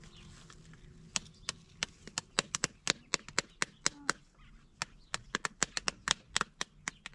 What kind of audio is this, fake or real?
real